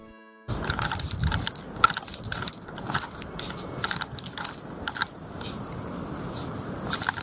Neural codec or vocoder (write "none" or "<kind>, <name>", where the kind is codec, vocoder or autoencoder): none